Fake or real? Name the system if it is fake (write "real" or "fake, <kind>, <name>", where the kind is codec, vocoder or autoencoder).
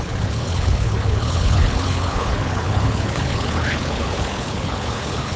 fake, codec, HILCodec